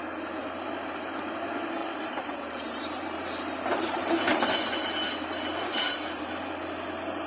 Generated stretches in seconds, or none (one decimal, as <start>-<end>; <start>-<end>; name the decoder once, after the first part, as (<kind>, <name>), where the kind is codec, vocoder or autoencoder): 0.4-1.2 (vocoder, BigVGAN v2); 1.8-6.2